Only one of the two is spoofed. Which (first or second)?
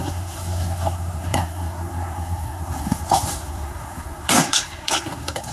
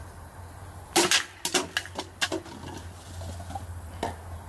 first